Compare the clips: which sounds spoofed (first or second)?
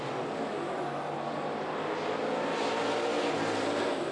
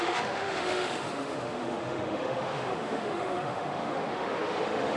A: second